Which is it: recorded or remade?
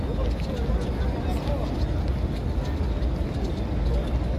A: recorded